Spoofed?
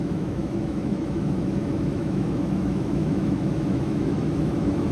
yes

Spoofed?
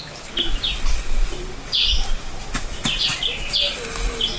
no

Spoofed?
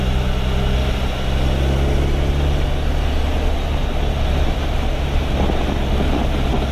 no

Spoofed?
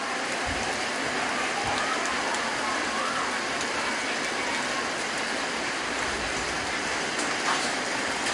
no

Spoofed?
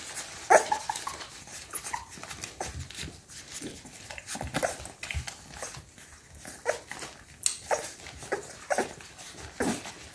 no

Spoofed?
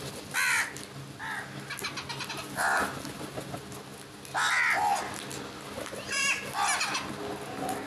no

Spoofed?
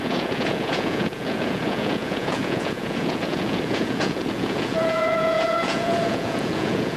yes